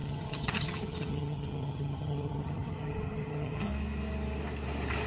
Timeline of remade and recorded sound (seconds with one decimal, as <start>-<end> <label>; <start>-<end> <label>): 0.0-3.7 remade; 3.7-5.1 recorded